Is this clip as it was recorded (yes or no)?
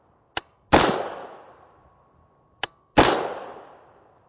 yes